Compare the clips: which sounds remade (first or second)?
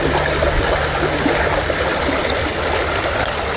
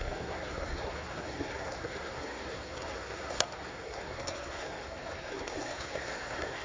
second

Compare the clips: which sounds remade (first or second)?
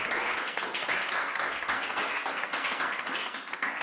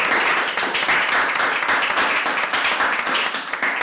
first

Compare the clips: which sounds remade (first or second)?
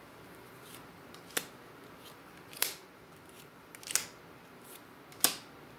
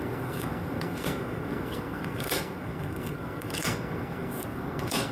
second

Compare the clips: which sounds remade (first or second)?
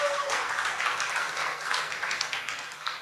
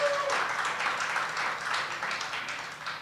first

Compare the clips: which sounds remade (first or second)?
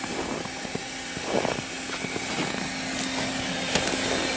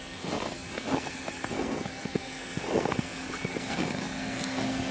second